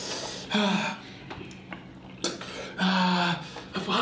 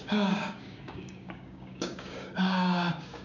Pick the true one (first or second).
first